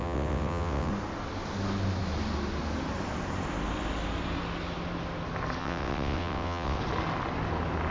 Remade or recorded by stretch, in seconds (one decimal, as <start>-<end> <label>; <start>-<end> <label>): 0.0-0.9 remade; 0.9-5.6 recorded; 5.6-6.8 remade; 6.8-7.9 recorded